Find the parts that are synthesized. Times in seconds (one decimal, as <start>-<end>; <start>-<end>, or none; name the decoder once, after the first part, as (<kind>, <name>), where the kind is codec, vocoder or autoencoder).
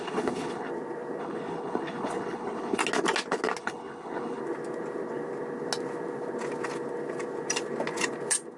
0.0-0.7 (codec, HILCodec); 1.2-2.8; 3.6-4.4